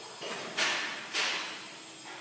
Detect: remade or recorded recorded